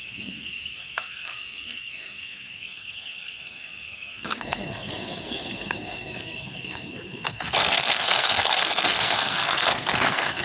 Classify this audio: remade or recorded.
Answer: remade